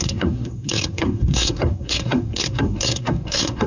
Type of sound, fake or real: fake